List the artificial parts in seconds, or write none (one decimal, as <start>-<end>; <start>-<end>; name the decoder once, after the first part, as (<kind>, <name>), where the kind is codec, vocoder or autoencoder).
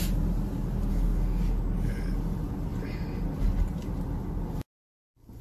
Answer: 0.9-1.4 (codec, SNAC)